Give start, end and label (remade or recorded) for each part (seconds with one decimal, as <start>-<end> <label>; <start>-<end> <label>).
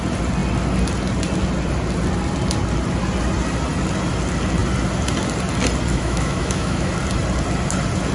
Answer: 0.0-5.9 recorded; 5.9-6.9 remade; 6.9-8.1 recorded